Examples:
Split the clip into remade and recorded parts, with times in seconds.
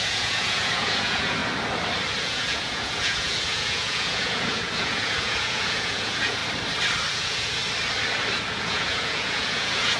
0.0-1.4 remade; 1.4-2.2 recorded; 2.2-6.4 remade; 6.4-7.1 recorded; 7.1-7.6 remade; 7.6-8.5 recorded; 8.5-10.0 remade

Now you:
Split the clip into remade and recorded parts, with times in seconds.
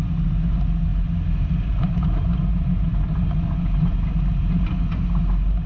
0.0-5.7 recorded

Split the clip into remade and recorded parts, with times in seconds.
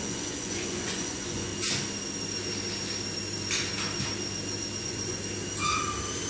0.0-1.5 remade; 1.5-4.8 recorded; 4.8-5.2 remade; 5.2-6.3 recorded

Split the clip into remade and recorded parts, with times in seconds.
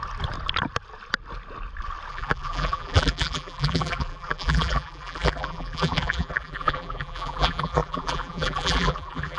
0.0-2.1 recorded; 2.1-9.4 remade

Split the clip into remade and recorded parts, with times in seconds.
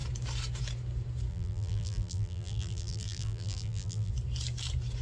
0.0-1.3 recorded; 1.3-4.1 remade; 4.1-5.0 recorded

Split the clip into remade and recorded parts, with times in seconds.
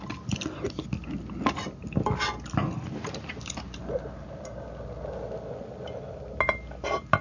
0.0-7.2 recorded